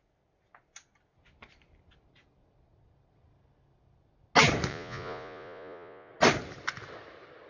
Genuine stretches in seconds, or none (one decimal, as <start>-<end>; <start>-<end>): 0.0-4.7; 6.1-7.5